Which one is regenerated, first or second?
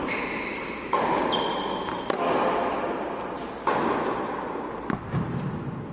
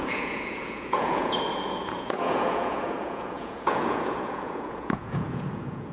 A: second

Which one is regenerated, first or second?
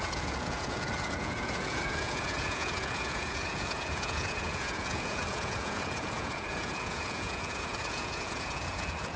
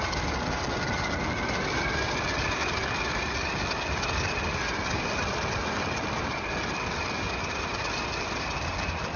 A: first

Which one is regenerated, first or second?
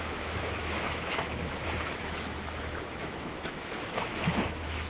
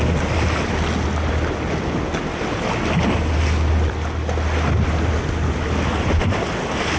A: first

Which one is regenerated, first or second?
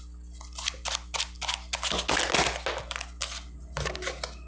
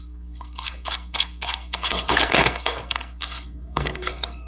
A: second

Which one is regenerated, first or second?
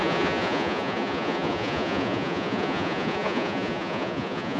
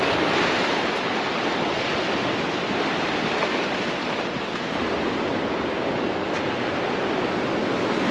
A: first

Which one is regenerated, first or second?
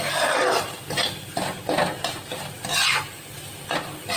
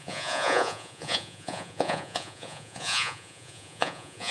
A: second